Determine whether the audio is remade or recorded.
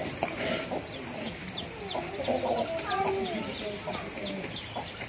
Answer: recorded